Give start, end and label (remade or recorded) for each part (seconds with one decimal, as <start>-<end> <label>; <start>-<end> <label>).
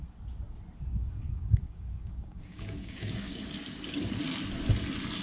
0.0-0.9 recorded; 0.9-3.5 remade; 3.5-5.2 recorded